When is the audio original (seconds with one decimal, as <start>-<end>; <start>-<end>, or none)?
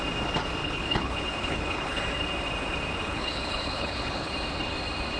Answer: 0.0-0.6; 2.0-3.0; 4.3-5.2